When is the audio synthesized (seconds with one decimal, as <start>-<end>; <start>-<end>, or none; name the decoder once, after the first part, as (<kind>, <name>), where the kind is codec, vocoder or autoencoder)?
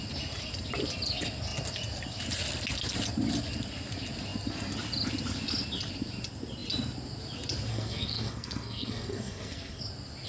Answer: 7.7-9.8 (codec, SNAC)